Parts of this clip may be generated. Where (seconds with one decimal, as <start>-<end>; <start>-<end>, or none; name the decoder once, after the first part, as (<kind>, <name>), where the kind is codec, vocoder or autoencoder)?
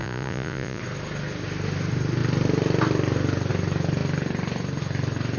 0.0-0.8 (vocoder, Vocos)